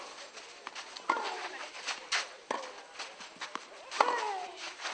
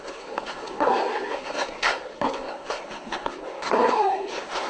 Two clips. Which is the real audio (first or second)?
first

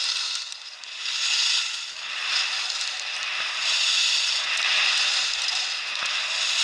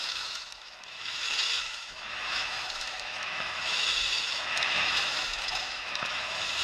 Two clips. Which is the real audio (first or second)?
first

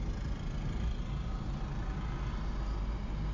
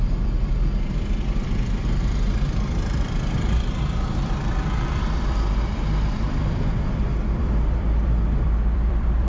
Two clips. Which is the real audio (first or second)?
first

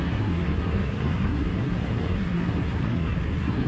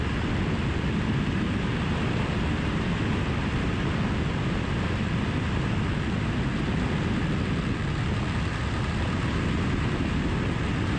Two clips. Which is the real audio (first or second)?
second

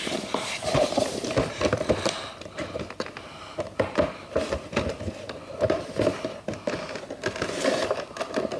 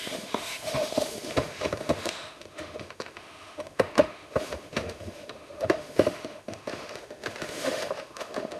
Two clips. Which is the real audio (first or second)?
first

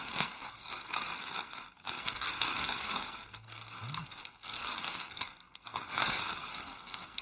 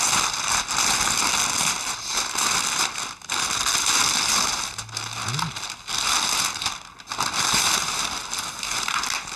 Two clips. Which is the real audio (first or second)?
second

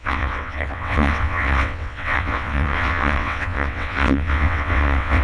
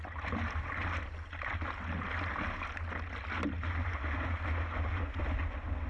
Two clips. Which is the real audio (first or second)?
second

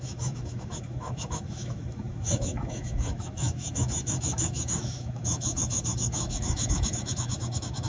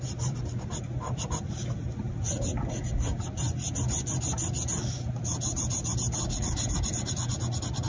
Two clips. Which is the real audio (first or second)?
second